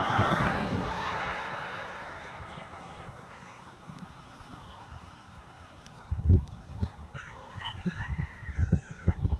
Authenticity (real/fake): fake